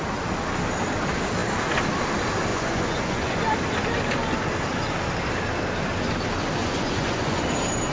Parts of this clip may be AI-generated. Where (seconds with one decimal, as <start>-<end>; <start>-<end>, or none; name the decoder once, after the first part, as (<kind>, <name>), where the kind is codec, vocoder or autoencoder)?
2.5-3.4 (vocoder, Vocos); 6.6-7.4

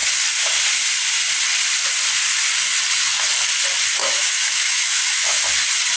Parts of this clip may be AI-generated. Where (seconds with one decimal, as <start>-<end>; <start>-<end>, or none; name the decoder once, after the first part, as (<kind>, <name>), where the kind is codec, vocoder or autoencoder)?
4.0-5.4 (autoencoder, DAC-VAE)

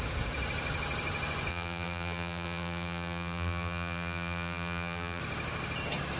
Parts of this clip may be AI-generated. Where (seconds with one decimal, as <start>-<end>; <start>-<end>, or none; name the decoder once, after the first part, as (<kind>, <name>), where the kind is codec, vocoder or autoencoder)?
1.5-5.2 (vocoder, BigVGAN v2)

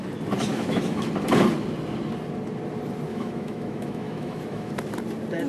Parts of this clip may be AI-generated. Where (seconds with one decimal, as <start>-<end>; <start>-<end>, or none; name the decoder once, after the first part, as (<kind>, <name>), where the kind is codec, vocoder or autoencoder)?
0.5-1.1 (autoencoder, DAC-VAE); 3.1-4.7

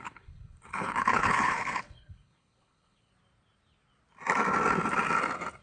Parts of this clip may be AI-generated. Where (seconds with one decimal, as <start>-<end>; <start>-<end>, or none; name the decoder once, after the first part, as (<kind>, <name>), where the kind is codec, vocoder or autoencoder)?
0.0-3.1 (codec, HILCodec)

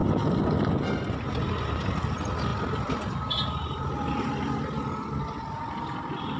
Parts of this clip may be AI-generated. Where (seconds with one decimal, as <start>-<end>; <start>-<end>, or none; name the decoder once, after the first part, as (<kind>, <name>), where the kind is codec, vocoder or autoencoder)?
none